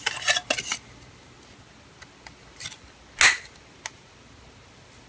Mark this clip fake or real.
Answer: real